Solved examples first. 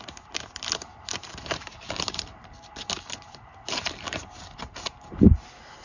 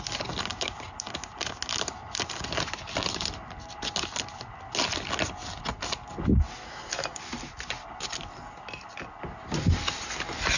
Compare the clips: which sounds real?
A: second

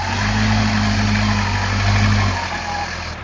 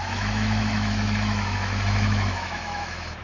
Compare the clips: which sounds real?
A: first